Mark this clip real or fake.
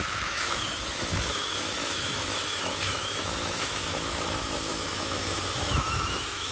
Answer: fake